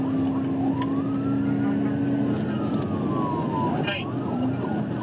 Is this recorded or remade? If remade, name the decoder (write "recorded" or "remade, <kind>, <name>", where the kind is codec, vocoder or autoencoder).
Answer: recorded